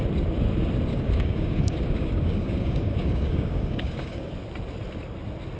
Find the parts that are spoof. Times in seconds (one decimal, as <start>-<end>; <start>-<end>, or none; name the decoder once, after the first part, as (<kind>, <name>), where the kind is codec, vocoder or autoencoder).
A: 0.9-4.3 (codec, DAC)